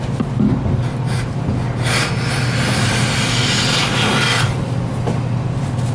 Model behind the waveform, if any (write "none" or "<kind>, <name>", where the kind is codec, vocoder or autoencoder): none